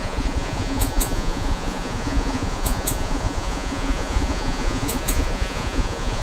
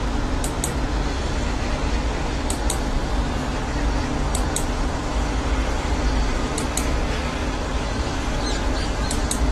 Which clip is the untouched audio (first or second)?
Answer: second